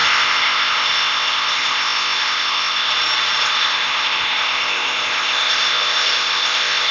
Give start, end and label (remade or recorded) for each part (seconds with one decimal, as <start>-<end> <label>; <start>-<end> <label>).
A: 0.0-2.9 remade; 2.9-3.4 recorded; 3.4-6.9 remade